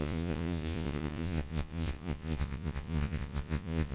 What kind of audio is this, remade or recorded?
remade